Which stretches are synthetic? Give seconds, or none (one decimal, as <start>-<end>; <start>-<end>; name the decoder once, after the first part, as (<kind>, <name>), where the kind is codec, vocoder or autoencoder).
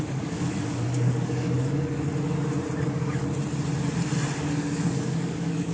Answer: 0.0-2.1 (codec, DAC); 2.8-3.2; 4.4-5.7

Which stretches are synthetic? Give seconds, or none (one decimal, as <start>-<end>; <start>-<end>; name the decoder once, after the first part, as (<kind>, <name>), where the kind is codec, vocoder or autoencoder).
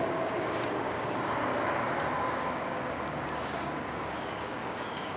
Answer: 0.0-1.5 (codec, DAC); 2.4-5.2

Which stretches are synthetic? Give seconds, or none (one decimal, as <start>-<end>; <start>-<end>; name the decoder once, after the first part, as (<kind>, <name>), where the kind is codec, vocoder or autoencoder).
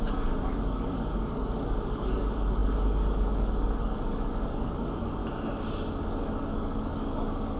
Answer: 0.0-5.2 (codec, DAC); 6.0-7.6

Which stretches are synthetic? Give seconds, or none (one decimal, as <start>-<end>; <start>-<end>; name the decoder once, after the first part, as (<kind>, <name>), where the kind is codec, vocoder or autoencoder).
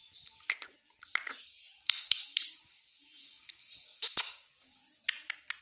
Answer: 1.4-4.8 (codec, DAC)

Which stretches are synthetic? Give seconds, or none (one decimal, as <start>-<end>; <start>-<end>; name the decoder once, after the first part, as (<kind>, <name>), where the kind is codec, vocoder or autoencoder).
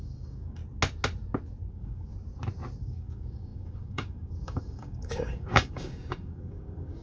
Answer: 0.0-0.6 (codec, DAC); 1.7-2.1; 2.8-7.0